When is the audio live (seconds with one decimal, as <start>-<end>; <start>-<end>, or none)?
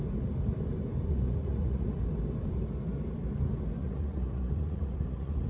0.0-1.1; 1.9-3.8